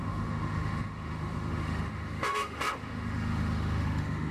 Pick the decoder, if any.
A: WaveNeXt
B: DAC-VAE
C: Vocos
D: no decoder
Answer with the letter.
B